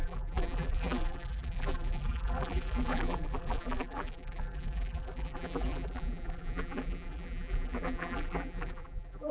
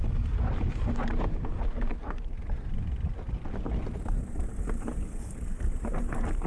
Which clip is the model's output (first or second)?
first